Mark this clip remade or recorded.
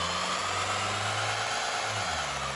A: recorded